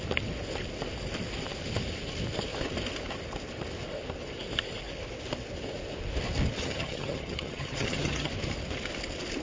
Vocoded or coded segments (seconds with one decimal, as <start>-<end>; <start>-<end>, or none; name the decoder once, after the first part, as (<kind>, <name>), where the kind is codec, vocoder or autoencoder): 6.6-8.3 (vocoder, HiFi-GAN)